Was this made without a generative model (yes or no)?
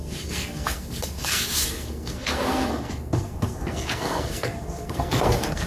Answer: no